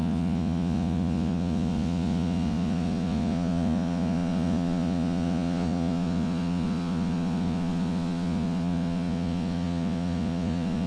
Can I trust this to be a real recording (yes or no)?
no